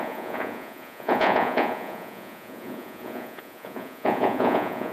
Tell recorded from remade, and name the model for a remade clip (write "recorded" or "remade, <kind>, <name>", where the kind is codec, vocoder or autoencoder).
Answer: remade, vocoder, Vocos